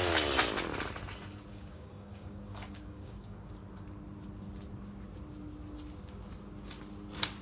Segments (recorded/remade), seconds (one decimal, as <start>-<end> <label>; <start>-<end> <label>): 0.0-1.5 recorded; 1.5-3.5 remade; 3.5-7.4 recorded